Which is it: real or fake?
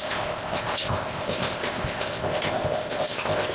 fake